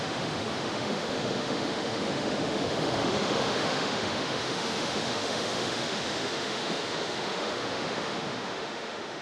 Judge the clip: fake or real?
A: fake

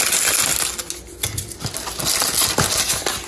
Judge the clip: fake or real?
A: real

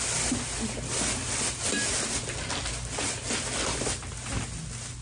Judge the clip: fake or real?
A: real